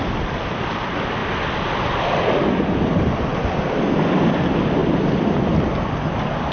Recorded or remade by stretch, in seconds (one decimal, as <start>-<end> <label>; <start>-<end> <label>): 0.0-6.5 recorded